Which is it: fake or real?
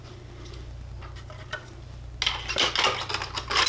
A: real